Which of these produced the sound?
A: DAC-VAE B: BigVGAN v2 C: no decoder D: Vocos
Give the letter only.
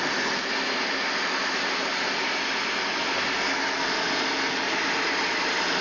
C